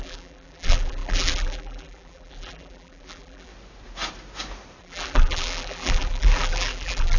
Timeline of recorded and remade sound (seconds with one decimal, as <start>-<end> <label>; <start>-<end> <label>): 0.0-3.5 remade; 3.5-4.8 recorded; 4.8-7.2 remade